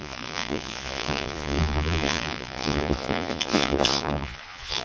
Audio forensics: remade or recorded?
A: remade